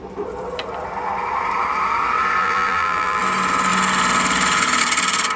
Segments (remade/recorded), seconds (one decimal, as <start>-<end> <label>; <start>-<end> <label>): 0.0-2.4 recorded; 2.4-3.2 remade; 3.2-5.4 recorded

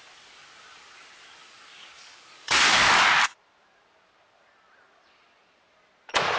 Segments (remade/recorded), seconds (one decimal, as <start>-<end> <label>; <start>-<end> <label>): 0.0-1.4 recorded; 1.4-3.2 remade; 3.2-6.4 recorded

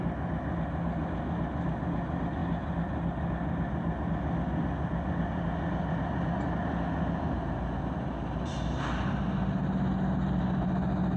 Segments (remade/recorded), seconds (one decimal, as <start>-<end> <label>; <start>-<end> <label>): 0.0-11.2 recorded

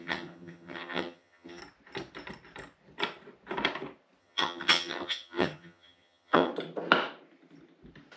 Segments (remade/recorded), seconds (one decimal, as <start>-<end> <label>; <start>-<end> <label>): 0.0-1.6 remade; 1.6-4.2 recorded; 4.2-6.5 remade; 6.5-8.2 recorded